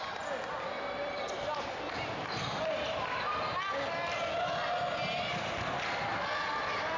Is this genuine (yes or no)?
yes